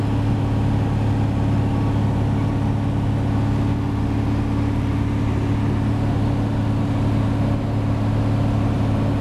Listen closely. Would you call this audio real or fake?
real